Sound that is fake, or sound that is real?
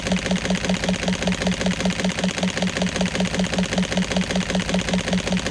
real